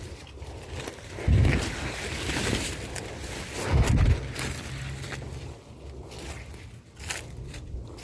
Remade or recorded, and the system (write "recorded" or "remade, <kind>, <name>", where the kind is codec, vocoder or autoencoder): recorded